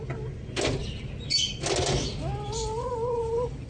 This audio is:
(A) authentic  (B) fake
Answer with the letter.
A